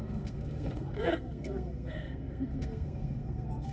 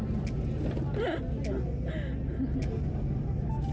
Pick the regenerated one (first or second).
first